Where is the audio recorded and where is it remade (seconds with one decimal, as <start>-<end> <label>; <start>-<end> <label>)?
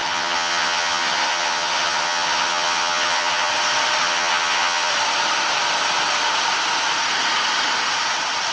0.0-3.5 remade; 3.5-4.0 recorded; 4.0-4.9 remade; 4.9-8.5 recorded